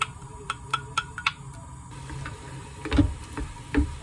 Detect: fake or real real